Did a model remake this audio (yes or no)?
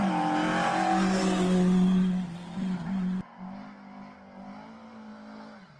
no